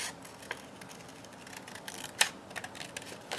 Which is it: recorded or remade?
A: recorded